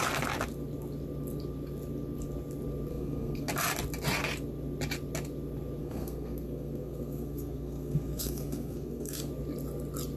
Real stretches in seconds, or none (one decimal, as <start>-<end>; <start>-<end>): 0.0-2.9; 3.5-5.8; 9.3-10.2